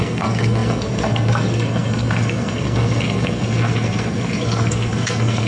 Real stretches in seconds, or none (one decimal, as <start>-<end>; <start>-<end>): none